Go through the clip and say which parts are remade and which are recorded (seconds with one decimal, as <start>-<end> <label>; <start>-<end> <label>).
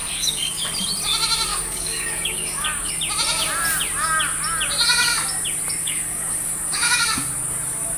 0.0-0.7 remade; 0.7-1.5 recorded; 1.5-2.9 remade; 2.9-5.8 recorded; 5.8-7.0 remade; 7.0-8.0 recorded